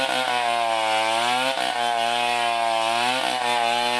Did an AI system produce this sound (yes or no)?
no